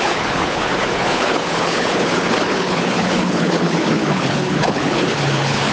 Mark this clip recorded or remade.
remade